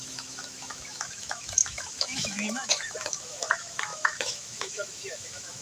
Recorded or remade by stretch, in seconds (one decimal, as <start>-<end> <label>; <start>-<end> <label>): 0.0-5.6 remade